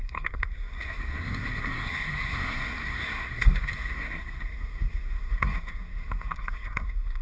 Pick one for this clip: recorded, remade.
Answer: remade